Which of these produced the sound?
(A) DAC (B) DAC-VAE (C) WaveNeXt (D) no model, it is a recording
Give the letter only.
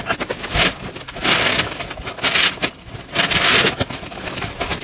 D